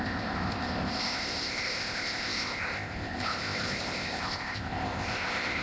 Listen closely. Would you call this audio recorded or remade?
remade